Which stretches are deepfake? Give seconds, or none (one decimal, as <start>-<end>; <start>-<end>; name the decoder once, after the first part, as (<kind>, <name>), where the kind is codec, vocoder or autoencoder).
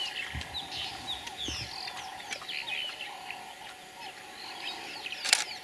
none